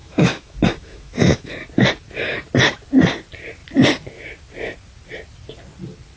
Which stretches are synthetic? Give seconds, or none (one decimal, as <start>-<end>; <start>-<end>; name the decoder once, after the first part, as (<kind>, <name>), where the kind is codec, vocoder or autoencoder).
0.0-1.5 (autoencoder, DAC-VAE)